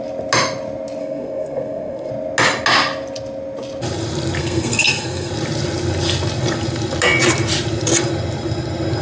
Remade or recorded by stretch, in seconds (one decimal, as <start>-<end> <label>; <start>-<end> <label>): 0.0-1.0 recorded; 1.0-2.1 remade; 2.1-4.4 recorded; 4.4-5.3 remade; 5.3-9.0 recorded